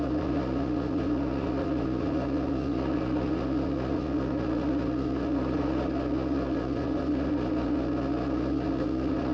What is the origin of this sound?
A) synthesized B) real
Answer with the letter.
A